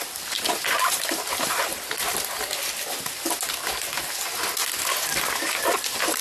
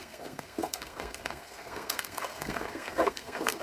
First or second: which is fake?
second